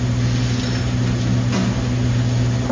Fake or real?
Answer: real